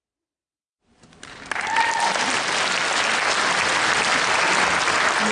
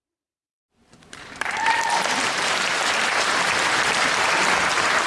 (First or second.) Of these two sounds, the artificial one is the second